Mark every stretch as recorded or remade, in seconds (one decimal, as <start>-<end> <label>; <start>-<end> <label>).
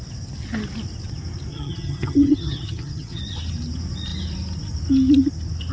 0.0-1.5 recorded; 1.5-3.2 remade; 3.2-5.7 recorded